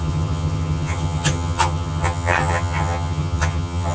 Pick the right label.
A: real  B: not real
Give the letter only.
B